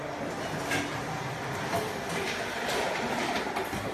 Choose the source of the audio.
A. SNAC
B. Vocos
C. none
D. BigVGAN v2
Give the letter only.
C